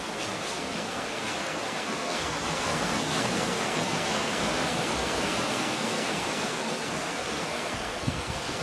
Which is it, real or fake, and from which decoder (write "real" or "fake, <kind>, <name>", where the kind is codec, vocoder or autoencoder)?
fake, codec, SNAC